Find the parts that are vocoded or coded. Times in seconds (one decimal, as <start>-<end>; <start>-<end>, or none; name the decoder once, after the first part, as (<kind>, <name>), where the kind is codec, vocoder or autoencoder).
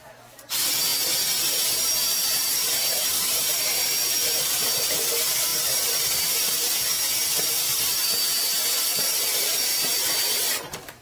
0.0-0.9 (vocoder, BigVGAN v2); 1.6-11.0